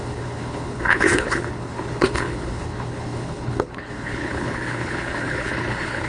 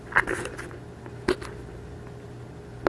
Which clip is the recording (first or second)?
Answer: second